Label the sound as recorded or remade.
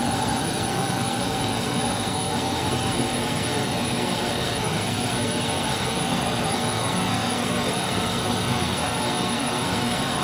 remade